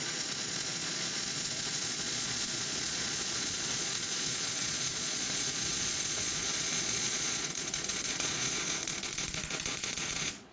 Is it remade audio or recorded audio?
remade